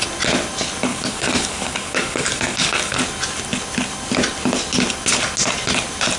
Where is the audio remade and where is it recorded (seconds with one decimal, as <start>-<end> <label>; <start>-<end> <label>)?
0.0-0.9 recorded; 0.9-3.0 remade; 3.0-6.2 recorded